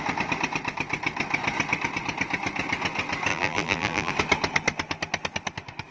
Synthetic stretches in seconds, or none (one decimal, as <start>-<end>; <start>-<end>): 3.3-4.1